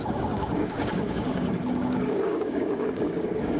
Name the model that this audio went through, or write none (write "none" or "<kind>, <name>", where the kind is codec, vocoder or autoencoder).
codec, DAC